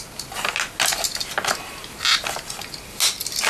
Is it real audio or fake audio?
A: real